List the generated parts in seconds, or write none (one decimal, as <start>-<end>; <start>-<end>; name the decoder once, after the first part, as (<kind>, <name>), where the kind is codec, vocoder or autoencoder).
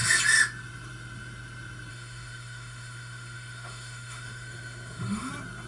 1.9-5.3 (autoencoder, DAC-VAE)